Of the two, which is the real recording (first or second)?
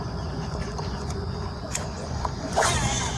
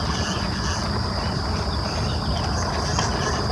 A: second